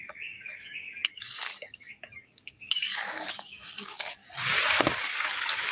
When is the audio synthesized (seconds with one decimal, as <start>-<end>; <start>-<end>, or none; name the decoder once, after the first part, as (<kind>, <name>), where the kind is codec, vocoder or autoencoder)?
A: 0.0-4.2 (codec, DAC); 5.0-5.7